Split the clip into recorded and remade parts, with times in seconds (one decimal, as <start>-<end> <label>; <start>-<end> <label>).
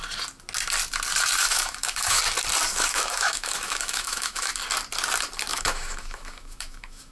0.0-1.4 recorded; 1.4-2.2 remade; 2.2-2.7 recorded; 2.7-4.5 remade; 4.5-5.5 recorded; 5.5-7.1 remade